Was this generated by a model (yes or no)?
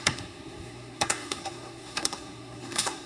yes